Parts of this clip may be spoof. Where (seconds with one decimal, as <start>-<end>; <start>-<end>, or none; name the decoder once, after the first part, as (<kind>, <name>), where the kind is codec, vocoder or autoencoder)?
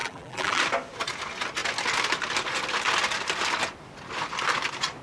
0.0-0.6 (vocoder, BigVGAN v2)